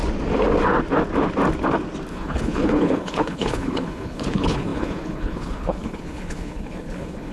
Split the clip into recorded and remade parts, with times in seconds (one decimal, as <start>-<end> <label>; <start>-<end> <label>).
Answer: 0.0-2.1 recorded; 2.1-7.3 remade

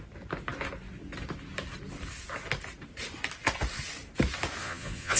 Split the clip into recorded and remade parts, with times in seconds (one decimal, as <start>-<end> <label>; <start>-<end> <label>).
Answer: 0.0-4.6 recorded; 4.6-5.2 remade

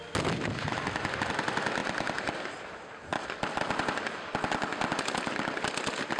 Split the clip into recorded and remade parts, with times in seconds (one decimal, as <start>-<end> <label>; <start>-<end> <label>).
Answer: 0.0-6.2 recorded

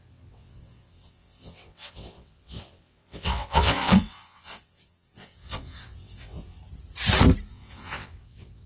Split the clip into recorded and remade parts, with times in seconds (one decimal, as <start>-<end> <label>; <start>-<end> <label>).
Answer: 0.0-6.6 remade; 6.6-7.5 recorded; 7.5-8.7 remade

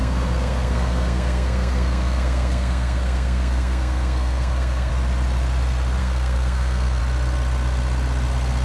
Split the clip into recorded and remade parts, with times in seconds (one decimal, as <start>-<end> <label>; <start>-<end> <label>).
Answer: 0.0-4.9 remade; 4.9-6.0 recorded; 6.0-7.0 remade; 7.0-8.6 recorded